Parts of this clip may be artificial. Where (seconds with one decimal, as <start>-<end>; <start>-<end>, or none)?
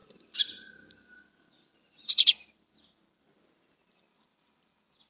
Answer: 0.0-2.7